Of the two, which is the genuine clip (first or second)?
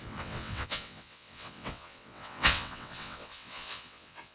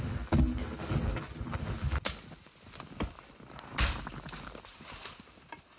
second